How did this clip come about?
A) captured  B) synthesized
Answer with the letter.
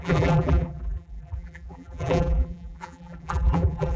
B